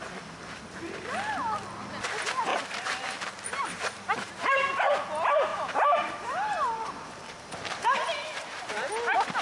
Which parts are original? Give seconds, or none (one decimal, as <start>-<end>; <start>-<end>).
0.0-2.5; 4.3-5.5; 8.9-9.4